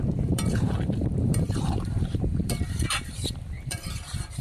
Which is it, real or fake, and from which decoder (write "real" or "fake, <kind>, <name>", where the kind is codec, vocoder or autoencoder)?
fake, vocoder, BigVGAN v2